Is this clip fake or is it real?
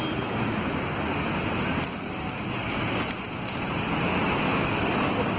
real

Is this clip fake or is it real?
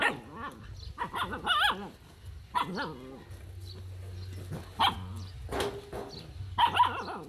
real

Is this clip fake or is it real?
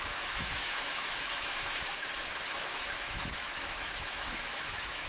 fake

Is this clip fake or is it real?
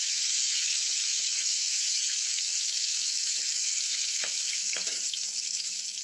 fake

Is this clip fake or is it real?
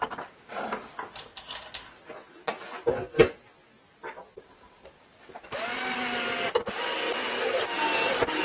real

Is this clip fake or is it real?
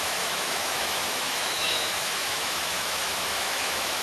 fake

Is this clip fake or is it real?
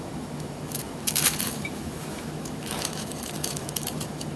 fake